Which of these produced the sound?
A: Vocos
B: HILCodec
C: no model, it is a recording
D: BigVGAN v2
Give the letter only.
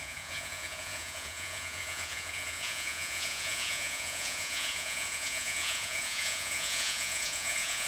A